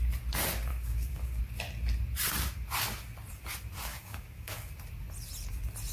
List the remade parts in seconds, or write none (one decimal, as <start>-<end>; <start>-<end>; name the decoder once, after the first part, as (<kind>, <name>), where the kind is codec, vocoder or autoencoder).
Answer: 0.7-1.4 (codec, DAC); 3.9-4.7